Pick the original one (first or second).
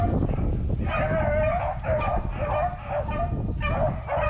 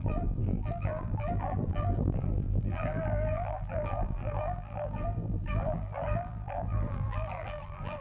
first